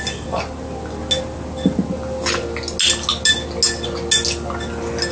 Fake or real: real